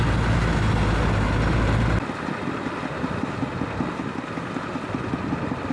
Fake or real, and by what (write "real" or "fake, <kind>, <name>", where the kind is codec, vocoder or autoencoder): real